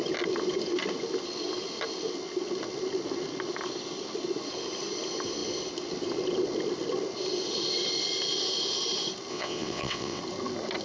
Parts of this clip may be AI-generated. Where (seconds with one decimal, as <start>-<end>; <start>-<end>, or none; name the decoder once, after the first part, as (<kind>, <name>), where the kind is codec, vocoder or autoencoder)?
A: 9.3-10.2 (vocoder, WaveNeXt)